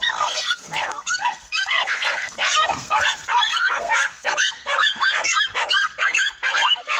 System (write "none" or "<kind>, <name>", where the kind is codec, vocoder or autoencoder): codec, SNAC